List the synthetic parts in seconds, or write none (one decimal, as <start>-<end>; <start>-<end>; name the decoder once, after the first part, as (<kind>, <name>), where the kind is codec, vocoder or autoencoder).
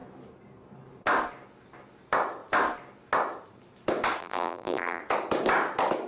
4.2-5.0 (vocoder, BigVGAN v2)